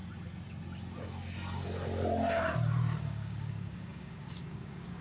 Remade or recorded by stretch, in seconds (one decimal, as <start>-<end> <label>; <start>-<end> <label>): 0.0-3.0 recorded; 3.0-5.0 remade